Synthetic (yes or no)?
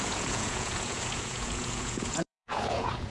yes